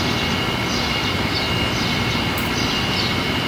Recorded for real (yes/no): yes